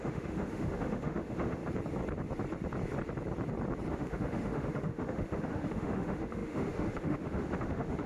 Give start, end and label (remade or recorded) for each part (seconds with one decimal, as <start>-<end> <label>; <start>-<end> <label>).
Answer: 0.0-1.6 remade; 1.6-3.9 recorded; 3.9-8.1 remade

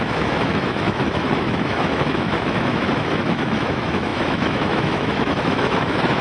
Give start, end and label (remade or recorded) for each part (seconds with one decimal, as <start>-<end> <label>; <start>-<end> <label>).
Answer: 0.0-6.2 remade

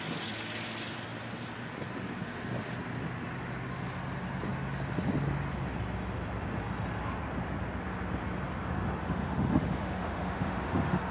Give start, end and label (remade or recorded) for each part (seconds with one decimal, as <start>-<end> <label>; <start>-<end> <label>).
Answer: 0.0-9.0 recorded; 9.0-11.1 remade

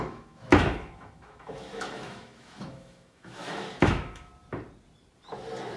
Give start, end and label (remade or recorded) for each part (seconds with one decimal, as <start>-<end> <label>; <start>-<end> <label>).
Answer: 0.0-4.3 remade; 4.3-5.8 recorded

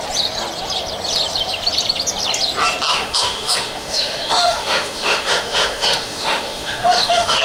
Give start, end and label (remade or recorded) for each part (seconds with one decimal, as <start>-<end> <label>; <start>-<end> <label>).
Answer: 0.0-2.9 recorded; 2.9-7.4 remade

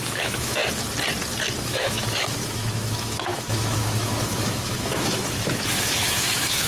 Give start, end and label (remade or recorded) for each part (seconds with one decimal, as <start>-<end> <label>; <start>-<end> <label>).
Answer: 0.0-0.6 remade; 0.6-1.6 recorded; 1.6-6.7 remade

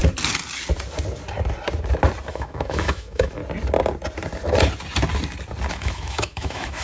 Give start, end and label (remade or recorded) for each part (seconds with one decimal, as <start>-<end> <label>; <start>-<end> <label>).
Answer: 0.0-2.3 recorded; 2.3-3.4 remade; 3.4-5.7 recorded; 5.7-6.8 remade

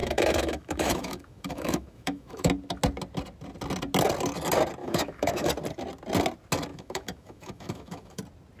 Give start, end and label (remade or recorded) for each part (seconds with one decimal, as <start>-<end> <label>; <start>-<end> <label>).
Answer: 0.0-2.5 remade; 2.5-4.8 recorded; 4.8-5.5 remade; 5.5-6.7 recorded; 6.7-8.2 remade; 8.2-8.6 recorded